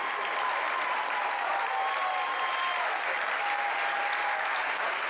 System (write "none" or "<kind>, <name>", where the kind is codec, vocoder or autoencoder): none